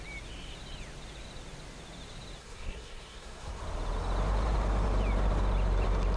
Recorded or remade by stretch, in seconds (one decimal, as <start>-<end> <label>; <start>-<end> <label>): 0.0-2.4 recorded; 2.4-3.6 remade; 3.6-6.2 recorded